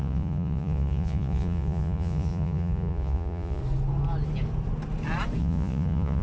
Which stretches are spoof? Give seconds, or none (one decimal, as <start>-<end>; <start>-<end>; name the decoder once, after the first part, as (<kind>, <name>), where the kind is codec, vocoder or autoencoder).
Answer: 0.0-3.6 (vocoder, Vocos); 5.4-6.2